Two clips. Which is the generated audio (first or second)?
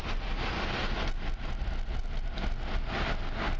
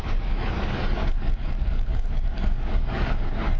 second